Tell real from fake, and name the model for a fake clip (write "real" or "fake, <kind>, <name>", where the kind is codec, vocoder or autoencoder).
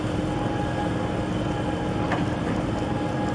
real